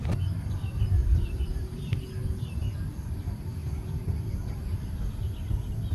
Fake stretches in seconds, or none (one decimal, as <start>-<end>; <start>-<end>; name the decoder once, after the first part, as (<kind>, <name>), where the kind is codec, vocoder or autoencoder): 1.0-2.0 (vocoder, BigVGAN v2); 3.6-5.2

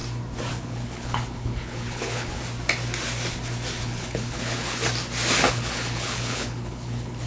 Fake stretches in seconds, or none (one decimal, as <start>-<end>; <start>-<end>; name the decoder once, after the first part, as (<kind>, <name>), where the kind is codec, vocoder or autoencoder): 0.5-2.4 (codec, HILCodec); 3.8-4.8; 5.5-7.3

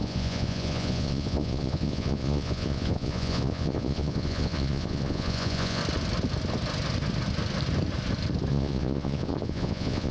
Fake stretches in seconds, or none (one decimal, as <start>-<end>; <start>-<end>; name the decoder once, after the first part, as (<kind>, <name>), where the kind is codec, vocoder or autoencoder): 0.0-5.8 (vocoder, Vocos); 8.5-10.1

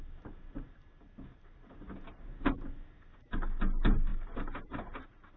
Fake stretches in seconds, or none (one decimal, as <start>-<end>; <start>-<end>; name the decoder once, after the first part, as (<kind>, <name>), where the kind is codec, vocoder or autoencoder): none

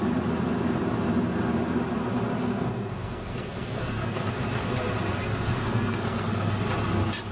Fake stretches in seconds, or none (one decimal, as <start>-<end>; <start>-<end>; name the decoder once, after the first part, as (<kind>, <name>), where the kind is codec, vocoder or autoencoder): 2.4-4.3 (codec, SNAC); 5.3-6.5

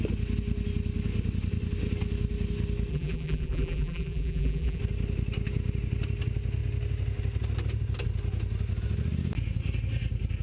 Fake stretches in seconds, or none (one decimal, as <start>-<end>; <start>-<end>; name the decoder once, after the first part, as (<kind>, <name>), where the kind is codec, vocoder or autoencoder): 2.9-4.8 (vocoder, BigVGAN v2)

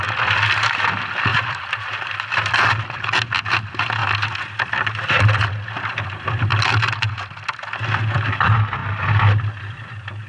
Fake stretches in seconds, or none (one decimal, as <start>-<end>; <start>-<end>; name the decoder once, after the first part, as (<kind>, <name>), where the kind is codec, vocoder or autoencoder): 1.3-2.3 (vocoder, BigVGAN v2)